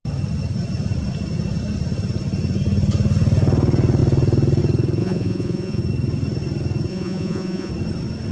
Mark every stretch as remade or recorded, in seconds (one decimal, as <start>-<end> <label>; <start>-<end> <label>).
0.0-5.0 recorded; 5.0-5.8 remade; 5.8-6.9 recorded; 6.9-7.7 remade; 7.7-8.3 recorded